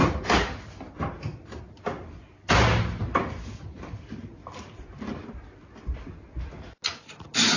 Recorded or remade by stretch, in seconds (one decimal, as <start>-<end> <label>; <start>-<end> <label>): 0.0-7.6 recorded